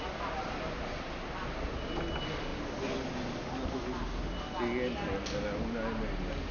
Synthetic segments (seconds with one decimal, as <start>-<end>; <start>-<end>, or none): none